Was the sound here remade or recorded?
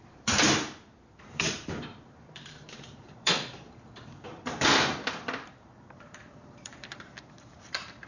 remade